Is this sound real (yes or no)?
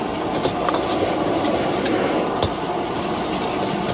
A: yes